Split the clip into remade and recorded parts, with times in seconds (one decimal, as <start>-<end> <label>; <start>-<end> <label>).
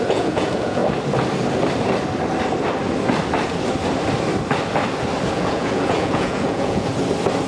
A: 0.0-0.8 remade; 0.8-5.3 recorded; 5.3-6.9 remade; 6.9-7.5 recorded